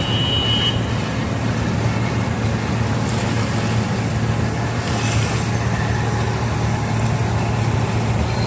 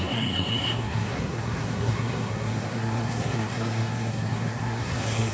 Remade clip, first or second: second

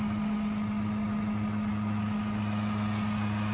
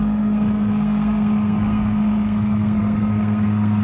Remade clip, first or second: second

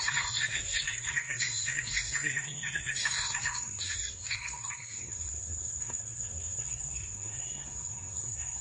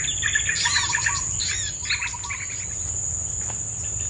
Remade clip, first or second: first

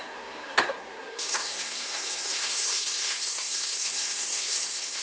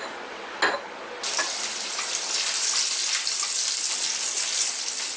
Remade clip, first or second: first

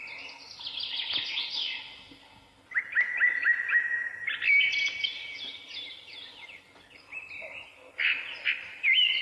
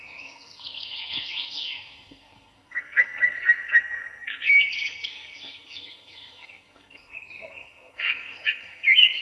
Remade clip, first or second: second